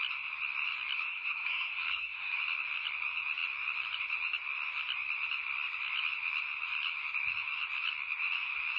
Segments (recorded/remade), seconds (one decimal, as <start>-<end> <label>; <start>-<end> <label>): 0.0-1.1 recorded; 1.1-2.4 remade; 2.4-8.8 recorded